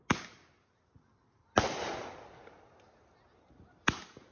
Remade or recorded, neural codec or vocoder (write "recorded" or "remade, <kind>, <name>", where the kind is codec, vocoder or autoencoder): recorded